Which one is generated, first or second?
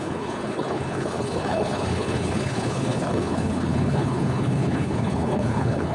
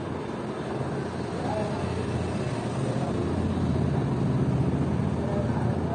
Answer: first